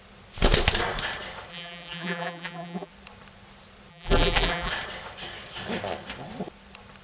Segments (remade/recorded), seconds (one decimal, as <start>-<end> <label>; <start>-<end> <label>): 0.0-1.5 recorded; 1.5-2.9 remade; 2.9-3.9 recorded; 3.9-4.7 remade; 4.7-7.0 recorded